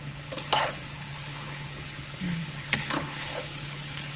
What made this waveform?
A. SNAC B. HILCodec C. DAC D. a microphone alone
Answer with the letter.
B